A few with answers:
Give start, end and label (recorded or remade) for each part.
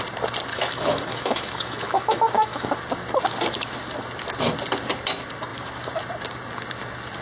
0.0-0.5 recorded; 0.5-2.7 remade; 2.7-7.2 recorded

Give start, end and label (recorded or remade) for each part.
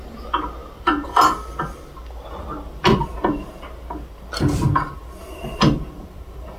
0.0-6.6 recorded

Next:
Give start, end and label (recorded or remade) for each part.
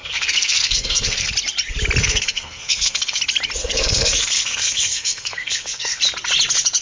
0.0-1.3 remade; 1.3-2.0 recorded; 2.0-3.2 remade; 3.2-3.6 recorded; 3.6-6.0 remade; 6.0-6.8 recorded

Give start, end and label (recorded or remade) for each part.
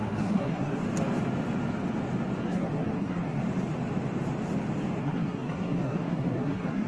0.0-0.8 remade; 0.8-2.4 recorded; 2.4-3.4 remade; 3.4-5.0 recorded; 5.0-6.9 remade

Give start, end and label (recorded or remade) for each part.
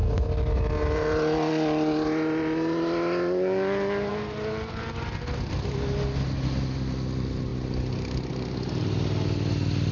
0.0-9.9 recorded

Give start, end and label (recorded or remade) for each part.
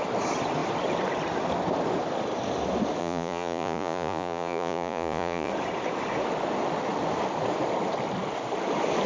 0.0-3.0 recorded; 3.0-5.5 remade; 5.5-9.1 recorded